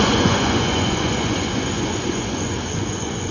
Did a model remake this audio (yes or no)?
yes